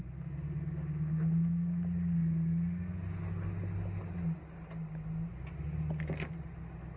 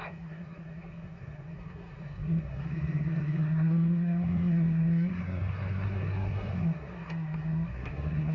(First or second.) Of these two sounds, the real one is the first